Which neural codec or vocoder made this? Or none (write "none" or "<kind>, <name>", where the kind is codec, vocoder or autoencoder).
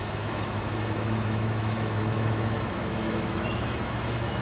autoencoder, DAC-VAE